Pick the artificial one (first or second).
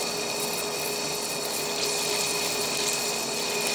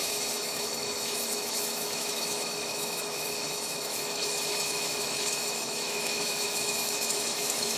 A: second